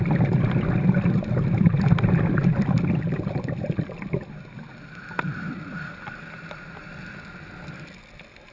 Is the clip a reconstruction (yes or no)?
no